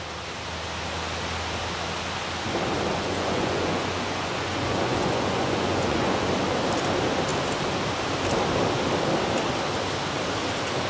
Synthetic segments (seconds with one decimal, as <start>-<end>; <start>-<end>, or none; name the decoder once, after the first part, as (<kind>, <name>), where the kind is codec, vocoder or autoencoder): 2.9-6.3 (vocoder, Vocos)